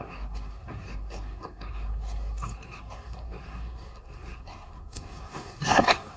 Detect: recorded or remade remade